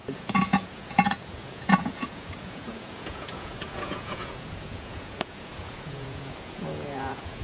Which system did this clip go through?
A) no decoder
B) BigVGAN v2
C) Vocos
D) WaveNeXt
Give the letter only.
C